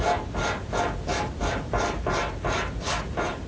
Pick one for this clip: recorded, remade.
recorded